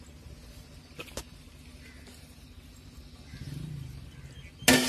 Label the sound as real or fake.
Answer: real